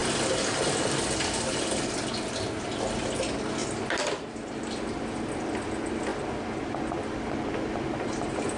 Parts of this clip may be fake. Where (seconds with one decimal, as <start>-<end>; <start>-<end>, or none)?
none